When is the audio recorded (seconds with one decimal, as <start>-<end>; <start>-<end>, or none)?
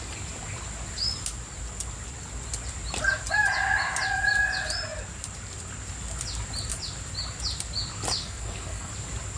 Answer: 0.0-8.2; 8.9-9.4